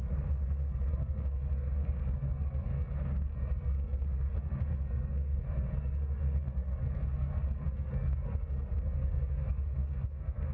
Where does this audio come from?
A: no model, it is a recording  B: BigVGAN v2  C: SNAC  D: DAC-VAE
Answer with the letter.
C